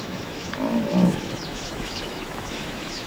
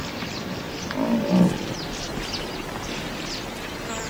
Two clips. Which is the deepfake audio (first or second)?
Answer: first